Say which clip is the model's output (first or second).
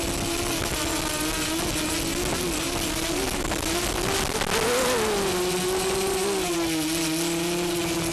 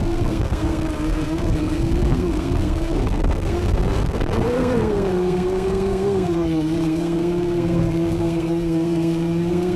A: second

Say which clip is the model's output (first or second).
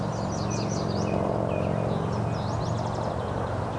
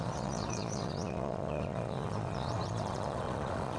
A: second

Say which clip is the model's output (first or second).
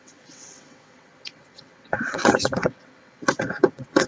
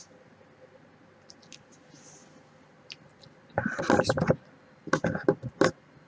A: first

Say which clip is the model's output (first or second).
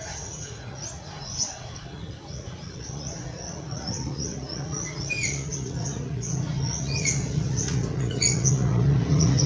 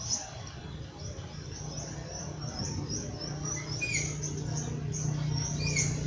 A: first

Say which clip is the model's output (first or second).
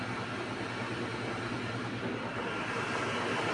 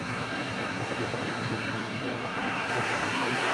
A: second